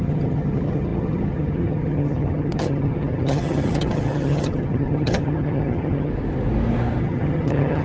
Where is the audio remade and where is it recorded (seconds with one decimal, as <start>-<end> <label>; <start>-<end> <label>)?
0.0-6.1 remade; 6.1-7.0 recorded; 7.0-7.8 remade